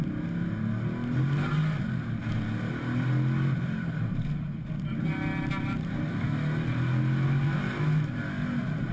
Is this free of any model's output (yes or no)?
yes